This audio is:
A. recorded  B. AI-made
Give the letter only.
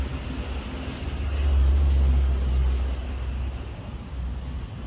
A